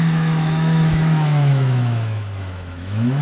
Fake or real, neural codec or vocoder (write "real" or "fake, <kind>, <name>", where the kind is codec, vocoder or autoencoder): fake, autoencoder, DAC-VAE